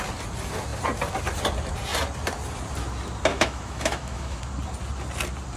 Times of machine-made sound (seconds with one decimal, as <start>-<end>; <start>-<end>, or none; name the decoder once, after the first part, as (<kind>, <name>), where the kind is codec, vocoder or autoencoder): 3.3-4.4 (autoencoder, DAC-VAE)